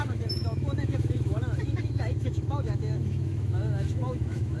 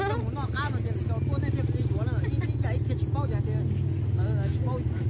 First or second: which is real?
second